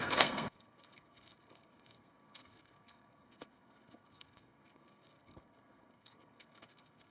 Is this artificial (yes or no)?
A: yes